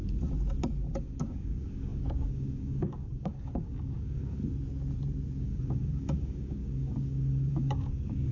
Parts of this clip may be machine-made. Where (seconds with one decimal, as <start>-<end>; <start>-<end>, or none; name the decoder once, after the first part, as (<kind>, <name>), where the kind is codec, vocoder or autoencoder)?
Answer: 0.8-4.4 (codec, DAC); 5.4-8.3